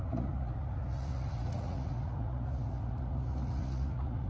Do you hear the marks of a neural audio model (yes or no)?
yes